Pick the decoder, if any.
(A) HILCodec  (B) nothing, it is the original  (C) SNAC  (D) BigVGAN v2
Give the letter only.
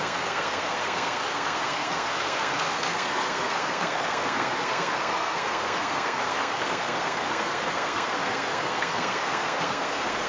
C